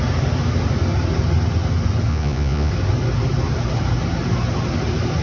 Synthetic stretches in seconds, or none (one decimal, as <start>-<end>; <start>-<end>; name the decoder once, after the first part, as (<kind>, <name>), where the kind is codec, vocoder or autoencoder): 2.1-2.7 (vocoder, Vocos)